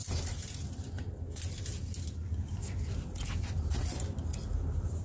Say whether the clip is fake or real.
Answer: real